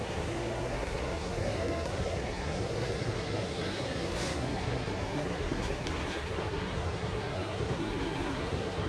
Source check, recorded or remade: remade